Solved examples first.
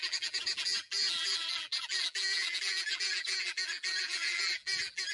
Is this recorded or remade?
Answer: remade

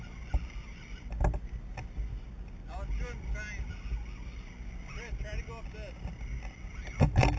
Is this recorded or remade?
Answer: recorded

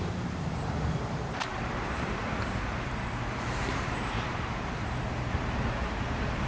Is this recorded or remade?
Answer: remade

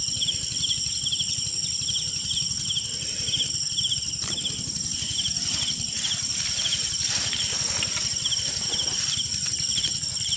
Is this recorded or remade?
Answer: recorded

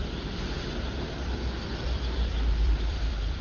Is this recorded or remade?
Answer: remade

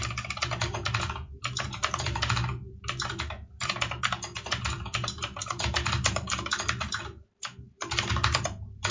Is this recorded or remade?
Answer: remade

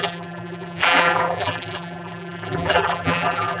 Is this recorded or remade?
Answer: remade